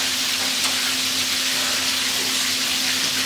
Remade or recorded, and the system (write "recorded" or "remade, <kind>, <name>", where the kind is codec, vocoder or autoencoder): recorded